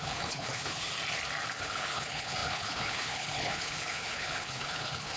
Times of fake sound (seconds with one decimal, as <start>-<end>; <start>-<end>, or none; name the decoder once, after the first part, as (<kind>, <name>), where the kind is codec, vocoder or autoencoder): 0.0-0.9 (codec, HILCodec); 1.6-5.2